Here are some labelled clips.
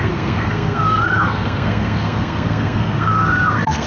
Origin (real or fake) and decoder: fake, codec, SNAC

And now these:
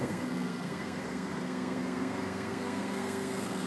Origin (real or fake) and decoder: fake, codec, SNAC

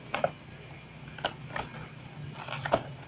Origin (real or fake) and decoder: real